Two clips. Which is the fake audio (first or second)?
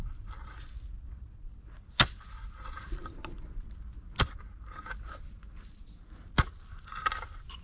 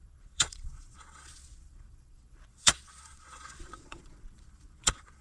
second